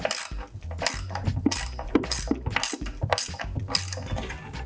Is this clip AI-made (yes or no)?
no